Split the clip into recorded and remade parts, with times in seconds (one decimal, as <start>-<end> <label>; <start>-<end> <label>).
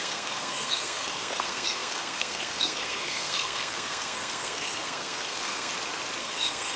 0.0-5.7 remade; 5.7-6.2 recorded; 6.2-6.8 remade